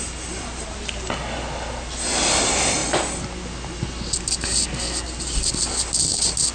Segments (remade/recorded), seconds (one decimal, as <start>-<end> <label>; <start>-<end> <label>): 0.0-6.5 recorded